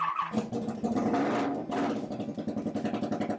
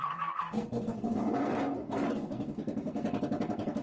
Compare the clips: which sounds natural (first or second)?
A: first